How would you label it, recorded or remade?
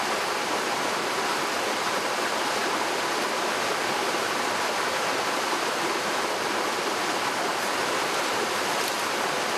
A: recorded